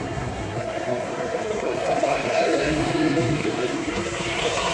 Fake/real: fake